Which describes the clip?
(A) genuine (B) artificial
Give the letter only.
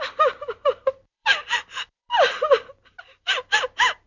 B